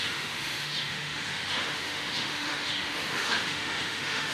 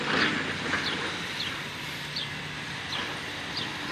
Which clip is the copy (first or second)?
first